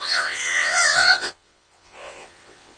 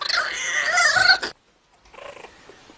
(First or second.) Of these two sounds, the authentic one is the second